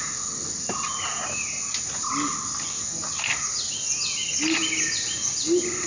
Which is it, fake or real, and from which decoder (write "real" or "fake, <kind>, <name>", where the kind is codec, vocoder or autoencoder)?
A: real